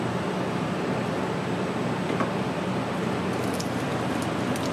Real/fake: real